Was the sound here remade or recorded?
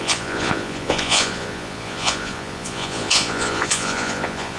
remade